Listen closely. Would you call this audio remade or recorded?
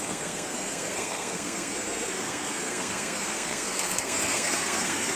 remade